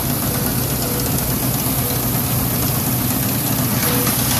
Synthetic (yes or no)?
no